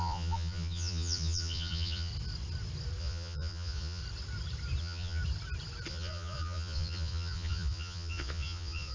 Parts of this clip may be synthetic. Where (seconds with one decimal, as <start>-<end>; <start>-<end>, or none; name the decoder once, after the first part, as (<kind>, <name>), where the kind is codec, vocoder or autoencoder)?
0.0-2.1 (vocoder, Vocos); 3.0-4.0; 4.8-5.2; 5.9-8.9